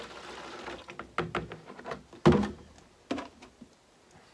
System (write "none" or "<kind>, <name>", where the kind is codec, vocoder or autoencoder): none